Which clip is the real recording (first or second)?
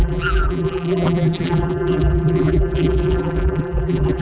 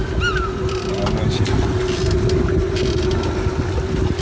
second